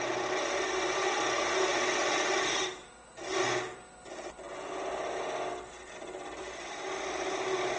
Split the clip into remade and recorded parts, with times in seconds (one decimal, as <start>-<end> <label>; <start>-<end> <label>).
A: 0.0-7.8 recorded